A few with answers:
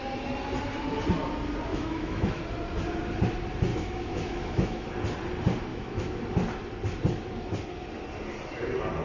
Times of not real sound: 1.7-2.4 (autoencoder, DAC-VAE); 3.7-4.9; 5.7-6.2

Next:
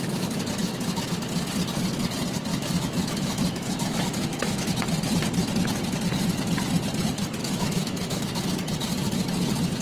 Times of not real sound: 0.6-1.2 (autoencoder, DAC-VAE); 2.5-4.7; 7.4-8.4

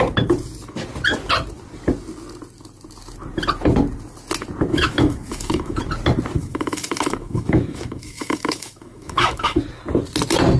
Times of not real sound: 4.7-5.8 (autoencoder, DAC-VAE); 6.4-9.6

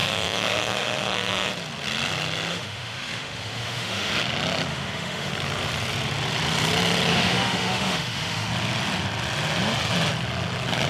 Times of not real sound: 0.0-1.5 (autoencoder, DAC-VAE); 2.5-4.1; 4.7-5.3; 7.1-8.5

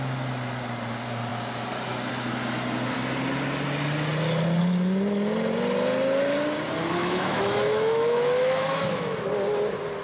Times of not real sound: 7.0-9.2 (autoencoder, DAC-VAE)

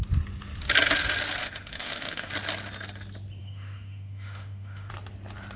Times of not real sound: 1.4-2.3 (autoencoder, DAC-VAE); 3.4-4.9